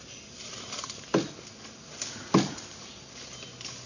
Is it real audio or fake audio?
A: real